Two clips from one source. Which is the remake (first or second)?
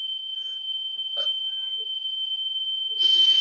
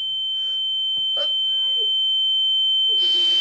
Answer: first